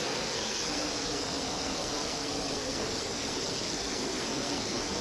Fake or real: fake